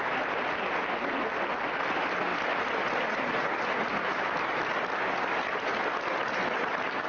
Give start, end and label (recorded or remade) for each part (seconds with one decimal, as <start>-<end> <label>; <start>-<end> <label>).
0.0-7.1 recorded